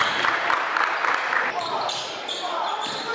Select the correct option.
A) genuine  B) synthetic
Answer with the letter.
B